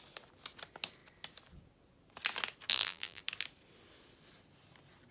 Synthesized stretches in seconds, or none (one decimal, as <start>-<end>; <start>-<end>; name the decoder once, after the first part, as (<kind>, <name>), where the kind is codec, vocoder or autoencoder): 2.7-3.2 (vocoder, BigVGAN v2)